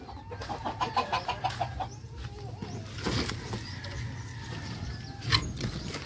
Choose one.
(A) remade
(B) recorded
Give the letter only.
B